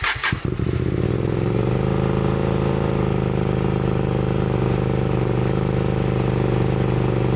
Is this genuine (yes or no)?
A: no